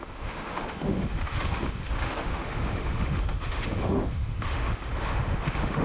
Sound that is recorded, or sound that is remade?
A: remade